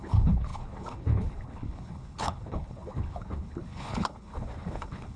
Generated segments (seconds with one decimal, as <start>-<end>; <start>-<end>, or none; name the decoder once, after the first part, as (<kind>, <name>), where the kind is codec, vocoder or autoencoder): 0.0-5.2 (codec, HILCodec)